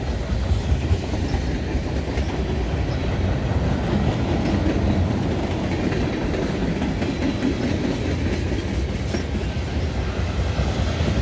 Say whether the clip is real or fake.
real